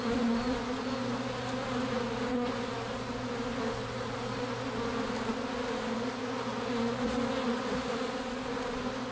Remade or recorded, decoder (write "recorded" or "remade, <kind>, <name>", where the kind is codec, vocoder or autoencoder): recorded